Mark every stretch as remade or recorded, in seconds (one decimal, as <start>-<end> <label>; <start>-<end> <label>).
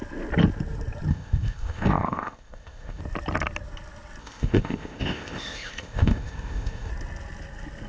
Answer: 0.0-1.1 recorded; 1.1-3.0 remade; 3.0-4.2 recorded; 4.2-6.9 remade; 6.9-7.9 recorded